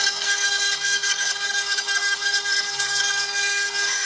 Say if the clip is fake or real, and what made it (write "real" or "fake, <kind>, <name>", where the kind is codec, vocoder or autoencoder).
fake, codec, SNAC